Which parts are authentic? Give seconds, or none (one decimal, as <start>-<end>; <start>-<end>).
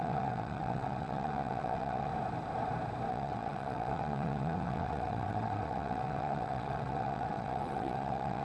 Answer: 2.1-3.1